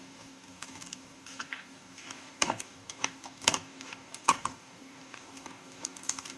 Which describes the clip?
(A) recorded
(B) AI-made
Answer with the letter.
B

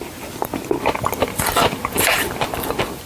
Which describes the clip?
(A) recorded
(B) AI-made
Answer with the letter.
A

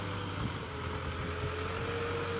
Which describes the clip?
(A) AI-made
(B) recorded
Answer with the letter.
B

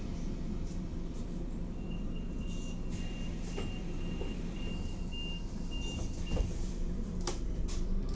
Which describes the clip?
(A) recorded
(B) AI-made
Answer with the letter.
B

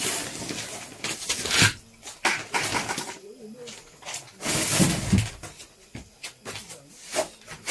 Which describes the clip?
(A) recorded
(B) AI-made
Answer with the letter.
A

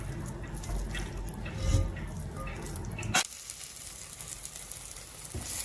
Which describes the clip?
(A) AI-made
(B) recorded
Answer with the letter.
B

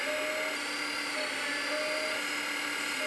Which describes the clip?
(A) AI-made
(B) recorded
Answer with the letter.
B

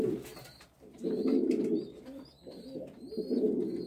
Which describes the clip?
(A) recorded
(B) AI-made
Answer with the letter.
B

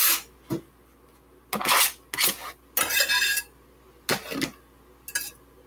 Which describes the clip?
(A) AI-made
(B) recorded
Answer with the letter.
B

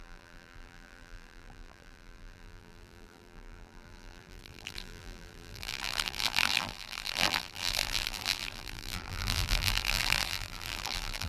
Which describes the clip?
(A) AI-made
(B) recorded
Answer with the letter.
A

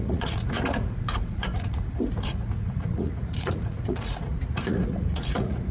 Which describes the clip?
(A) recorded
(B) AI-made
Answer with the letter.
B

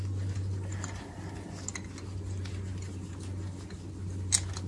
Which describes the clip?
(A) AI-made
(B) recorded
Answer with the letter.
B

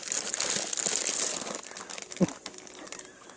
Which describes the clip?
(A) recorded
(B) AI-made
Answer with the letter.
B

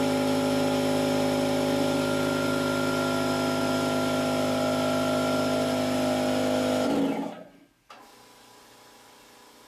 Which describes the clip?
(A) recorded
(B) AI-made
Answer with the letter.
A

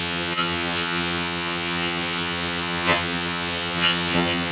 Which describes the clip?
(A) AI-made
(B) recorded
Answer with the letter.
A